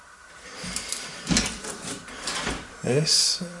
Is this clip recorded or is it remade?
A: remade